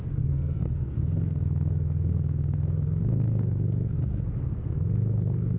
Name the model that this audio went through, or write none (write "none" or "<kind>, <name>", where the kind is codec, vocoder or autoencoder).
codec, SNAC